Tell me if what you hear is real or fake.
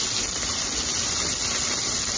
real